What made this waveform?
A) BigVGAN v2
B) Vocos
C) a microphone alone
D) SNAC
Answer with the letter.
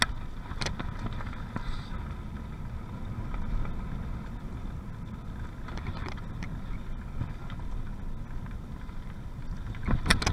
C